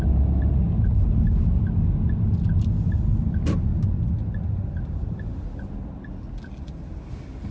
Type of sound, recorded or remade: recorded